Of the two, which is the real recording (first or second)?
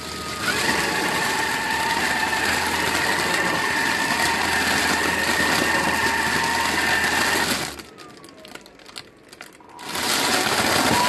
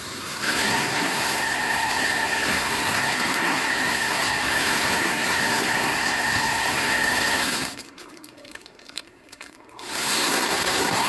first